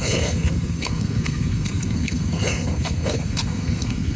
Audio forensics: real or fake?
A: fake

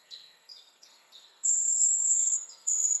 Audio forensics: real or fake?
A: fake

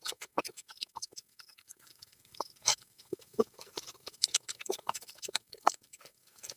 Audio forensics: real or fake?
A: fake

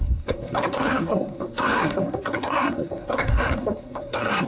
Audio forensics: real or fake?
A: fake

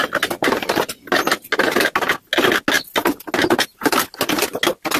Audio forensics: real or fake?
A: real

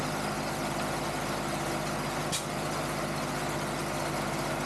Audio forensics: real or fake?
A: real